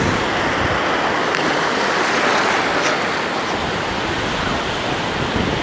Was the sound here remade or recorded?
recorded